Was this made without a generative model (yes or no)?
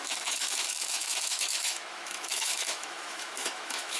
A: no